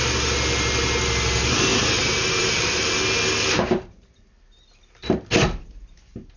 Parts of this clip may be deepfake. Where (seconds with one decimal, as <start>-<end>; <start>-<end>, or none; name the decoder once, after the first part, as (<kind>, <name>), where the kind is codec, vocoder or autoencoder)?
1.7-2.8 (vocoder, BigVGAN v2)